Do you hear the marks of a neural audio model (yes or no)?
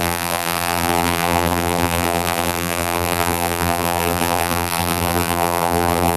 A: yes